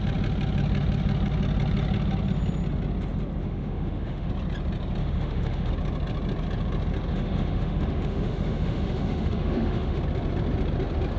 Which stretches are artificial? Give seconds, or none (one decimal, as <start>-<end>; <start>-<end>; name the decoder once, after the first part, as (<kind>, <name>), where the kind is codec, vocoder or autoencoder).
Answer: 3.4-4.3 (autoencoder, DAC-VAE); 5.0-5.7; 7.1-10.0